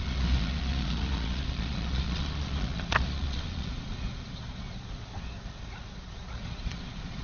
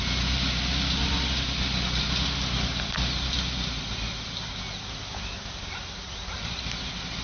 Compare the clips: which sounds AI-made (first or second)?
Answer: first